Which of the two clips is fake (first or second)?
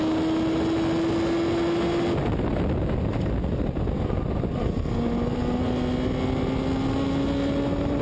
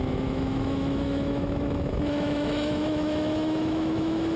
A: second